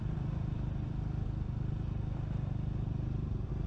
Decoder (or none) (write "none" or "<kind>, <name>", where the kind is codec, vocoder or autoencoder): none